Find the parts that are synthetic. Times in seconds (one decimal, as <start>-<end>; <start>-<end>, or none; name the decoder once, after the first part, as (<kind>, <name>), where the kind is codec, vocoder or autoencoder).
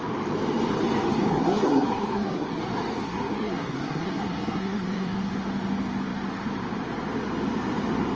1.3-2.6 (codec, SNAC); 3.0-5.3